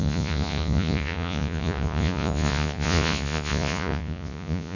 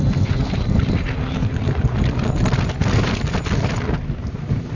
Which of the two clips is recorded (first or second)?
second